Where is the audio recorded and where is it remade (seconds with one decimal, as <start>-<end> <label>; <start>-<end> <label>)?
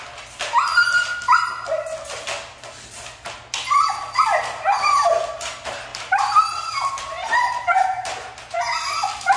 0.0-5.9 recorded; 5.9-8.6 remade; 8.6-9.4 recorded